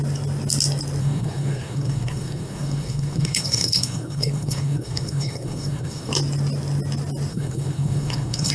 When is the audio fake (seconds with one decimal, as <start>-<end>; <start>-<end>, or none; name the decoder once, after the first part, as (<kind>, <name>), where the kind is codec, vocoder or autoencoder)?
1.0-6.1 (codec, SNAC); 7.3-8.5